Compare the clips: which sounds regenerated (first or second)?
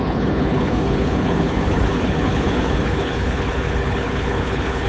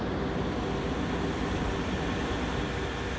first